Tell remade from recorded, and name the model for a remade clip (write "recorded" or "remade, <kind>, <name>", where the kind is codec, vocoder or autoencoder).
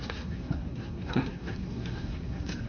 remade, codec, SNAC